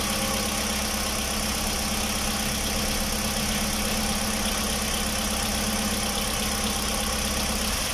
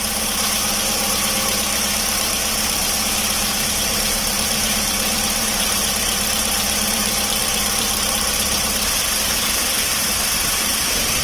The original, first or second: first